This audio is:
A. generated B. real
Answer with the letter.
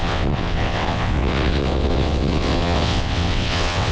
A